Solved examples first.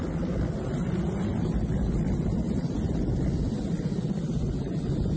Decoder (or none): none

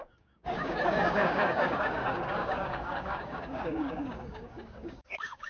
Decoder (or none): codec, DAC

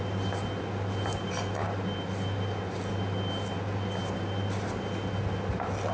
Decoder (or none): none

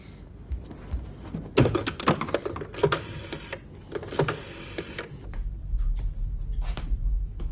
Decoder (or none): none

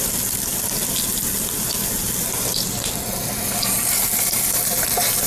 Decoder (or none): none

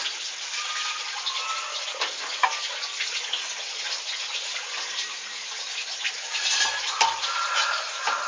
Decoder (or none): none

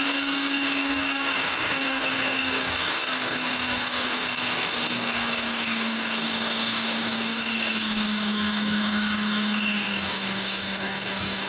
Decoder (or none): codec, DAC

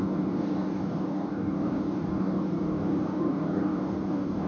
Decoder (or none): codec, DAC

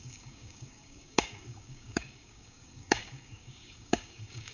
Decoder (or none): codec, DAC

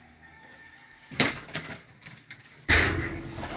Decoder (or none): codec, DAC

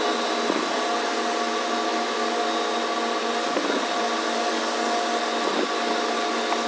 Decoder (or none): none